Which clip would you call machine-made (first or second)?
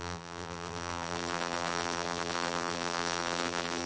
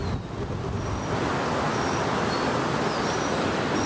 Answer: first